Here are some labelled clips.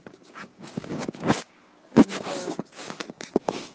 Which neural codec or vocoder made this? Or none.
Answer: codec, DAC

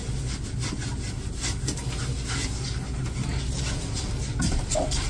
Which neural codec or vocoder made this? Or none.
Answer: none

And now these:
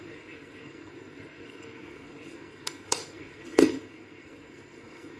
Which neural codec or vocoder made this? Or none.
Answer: codec, SNAC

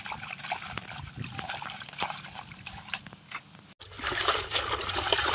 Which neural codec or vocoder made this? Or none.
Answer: none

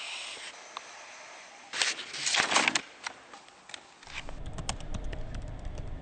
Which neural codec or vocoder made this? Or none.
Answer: none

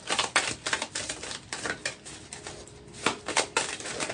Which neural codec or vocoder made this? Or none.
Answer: none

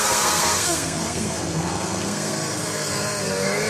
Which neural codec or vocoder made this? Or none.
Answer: codec, SNAC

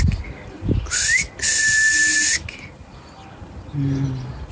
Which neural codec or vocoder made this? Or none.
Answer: none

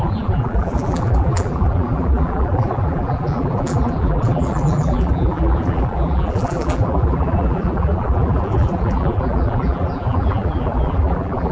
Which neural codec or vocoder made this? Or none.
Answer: vocoder, BigVGAN v2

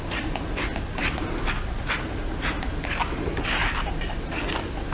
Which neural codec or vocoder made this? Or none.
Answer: none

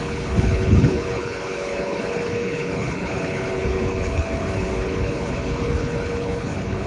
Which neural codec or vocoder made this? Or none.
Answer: codec, HILCodec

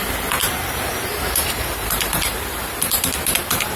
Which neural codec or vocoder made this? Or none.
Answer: vocoder, BigVGAN v2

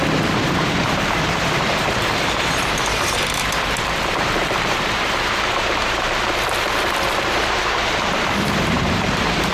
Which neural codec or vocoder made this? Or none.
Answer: vocoder, BigVGAN v2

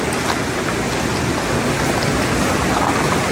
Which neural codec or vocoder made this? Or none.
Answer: none